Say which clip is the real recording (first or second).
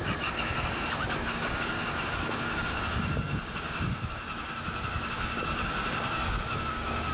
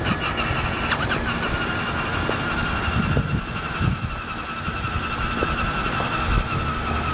second